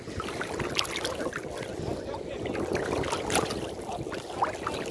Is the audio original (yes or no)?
yes